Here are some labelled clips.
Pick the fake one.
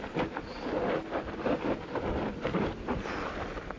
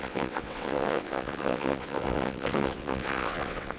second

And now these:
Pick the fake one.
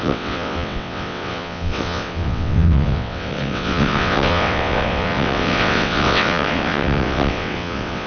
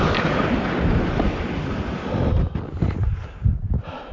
first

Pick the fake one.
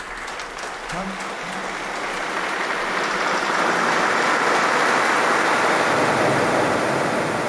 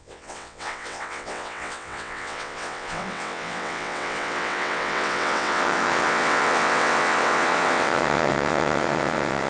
second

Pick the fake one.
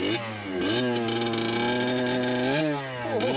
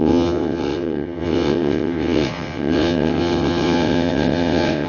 second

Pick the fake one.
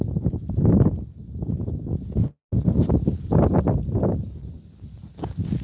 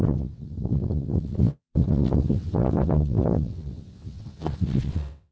second